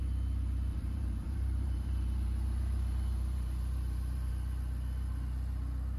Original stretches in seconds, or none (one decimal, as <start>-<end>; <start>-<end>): 0.0-0.7; 4.3-6.0